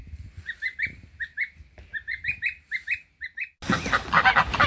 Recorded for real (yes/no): yes